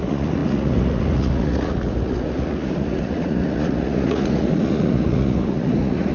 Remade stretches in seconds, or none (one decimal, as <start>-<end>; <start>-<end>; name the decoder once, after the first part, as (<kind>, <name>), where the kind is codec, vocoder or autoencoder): 0.0-6.1 (vocoder, Vocos)